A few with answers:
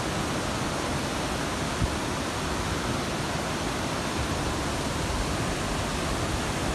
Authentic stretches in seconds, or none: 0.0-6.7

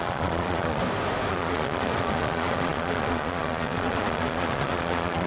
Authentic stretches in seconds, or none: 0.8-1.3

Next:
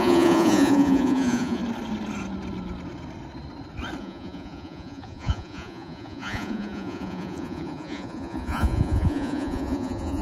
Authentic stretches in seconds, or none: 1.6-4.0

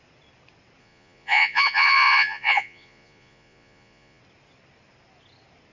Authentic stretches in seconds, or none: 0.0-0.8; 4.2-5.7